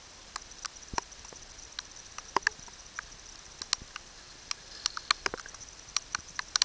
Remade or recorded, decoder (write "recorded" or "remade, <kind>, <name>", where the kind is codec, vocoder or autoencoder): recorded